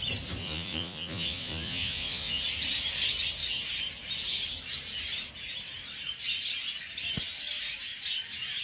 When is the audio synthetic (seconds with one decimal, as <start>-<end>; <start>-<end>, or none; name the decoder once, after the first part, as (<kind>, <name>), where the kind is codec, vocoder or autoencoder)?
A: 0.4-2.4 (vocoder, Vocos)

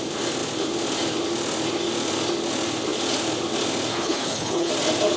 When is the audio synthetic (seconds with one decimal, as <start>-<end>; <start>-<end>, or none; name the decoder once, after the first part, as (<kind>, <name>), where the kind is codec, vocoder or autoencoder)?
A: 3.9-4.7 (codec, HILCodec)

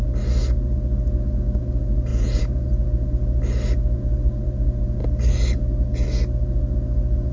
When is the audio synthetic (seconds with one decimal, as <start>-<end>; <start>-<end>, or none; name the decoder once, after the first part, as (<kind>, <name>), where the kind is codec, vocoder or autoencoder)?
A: 2.1-2.7 (vocoder, Vocos)

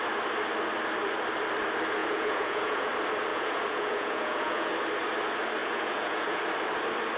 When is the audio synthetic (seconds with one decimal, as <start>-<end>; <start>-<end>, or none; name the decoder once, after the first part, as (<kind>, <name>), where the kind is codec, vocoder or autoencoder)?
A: 2.0-2.9 (vocoder, Vocos); 3.3-4.7; 5.6-6.4